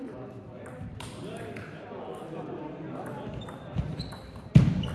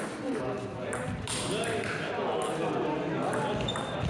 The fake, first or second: first